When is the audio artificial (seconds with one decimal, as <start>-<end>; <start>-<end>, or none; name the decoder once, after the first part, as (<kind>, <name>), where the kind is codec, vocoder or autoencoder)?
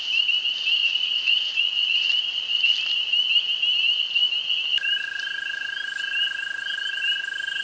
0.8-2.1 (vocoder, Vocos)